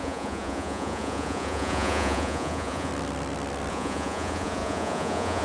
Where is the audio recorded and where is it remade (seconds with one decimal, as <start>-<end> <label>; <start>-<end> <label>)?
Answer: 0.0-2.9 remade; 2.9-3.7 recorded; 3.7-5.4 remade